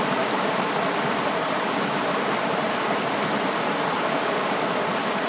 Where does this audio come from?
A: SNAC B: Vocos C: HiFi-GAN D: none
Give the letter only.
D